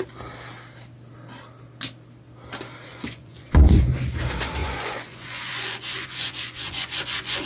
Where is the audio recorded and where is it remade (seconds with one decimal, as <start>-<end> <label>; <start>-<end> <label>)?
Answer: 0.0-2.9 recorded; 2.9-3.9 remade; 3.9-4.6 recorded; 4.6-7.5 remade